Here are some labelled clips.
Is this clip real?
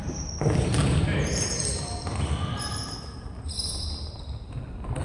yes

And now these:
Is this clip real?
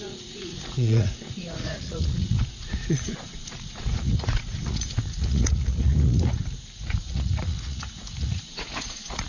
no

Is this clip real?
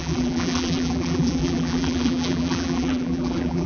no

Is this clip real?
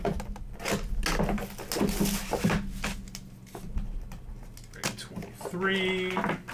yes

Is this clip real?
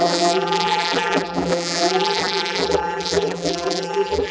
no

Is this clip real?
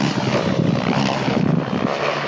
yes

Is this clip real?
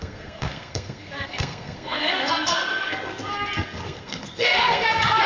no